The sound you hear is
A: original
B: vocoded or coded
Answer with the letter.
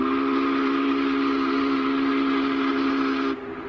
A